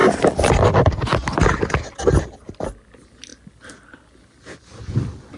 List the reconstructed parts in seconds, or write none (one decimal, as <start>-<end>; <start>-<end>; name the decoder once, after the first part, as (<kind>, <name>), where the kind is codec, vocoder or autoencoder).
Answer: none